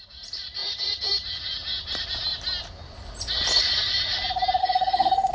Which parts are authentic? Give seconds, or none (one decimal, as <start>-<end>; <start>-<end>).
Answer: 0.0-4.6